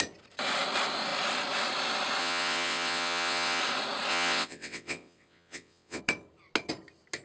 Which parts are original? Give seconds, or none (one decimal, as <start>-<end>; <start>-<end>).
0.0-2.2; 3.6-4.1; 6.0-7.2